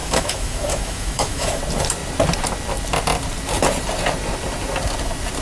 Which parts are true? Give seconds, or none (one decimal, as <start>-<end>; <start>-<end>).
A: 1.6-5.4